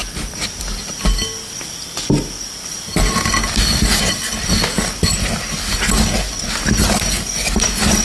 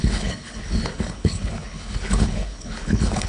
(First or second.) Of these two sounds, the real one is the first